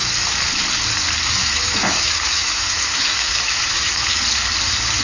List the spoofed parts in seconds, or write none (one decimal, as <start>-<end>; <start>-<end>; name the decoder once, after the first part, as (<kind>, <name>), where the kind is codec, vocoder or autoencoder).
1.2-4.2 (autoencoder, DAC-VAE)

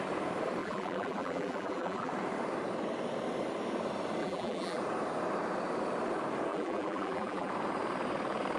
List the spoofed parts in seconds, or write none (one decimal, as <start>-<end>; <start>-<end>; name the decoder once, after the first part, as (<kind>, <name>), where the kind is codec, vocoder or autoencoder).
0.6-2.1 (vocoder, BigVGAN v2); 4.2-4.8; 6.5-7.5

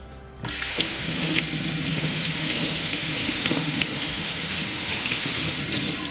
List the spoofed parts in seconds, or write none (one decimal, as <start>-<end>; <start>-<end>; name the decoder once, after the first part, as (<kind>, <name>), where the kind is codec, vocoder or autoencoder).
0.7-1.4 (autoencoder, DAC-VAE); 1.9-5.6

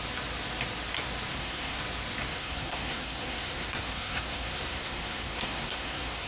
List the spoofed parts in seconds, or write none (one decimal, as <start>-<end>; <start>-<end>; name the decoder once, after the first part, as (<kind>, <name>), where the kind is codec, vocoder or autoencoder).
1.3-1.8 (codec, SNAC); 2.3-6.3

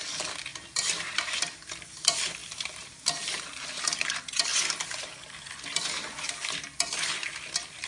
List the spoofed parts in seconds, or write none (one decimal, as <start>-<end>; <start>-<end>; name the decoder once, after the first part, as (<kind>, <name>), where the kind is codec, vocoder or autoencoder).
0.5-1.5 (vocoder, BigVGAN v2); 2.4-3.8

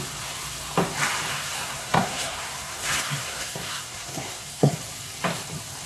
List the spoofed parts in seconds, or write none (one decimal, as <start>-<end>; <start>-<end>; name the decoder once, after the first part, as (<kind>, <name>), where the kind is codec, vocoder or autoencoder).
1.3-4.8 (codec, SNAC)